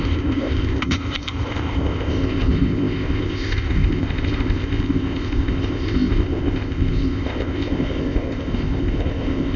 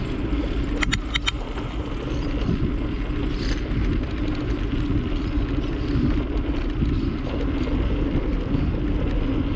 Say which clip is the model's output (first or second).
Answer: first